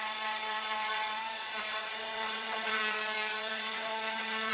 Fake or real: fake